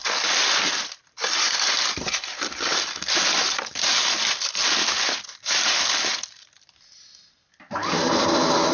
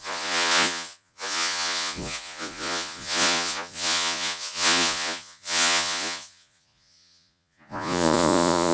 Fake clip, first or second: second